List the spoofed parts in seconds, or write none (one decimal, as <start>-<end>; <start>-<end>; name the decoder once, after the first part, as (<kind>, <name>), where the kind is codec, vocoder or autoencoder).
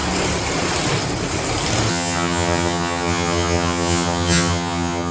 1.9-5.1 (vocoder, HiFi-GAN)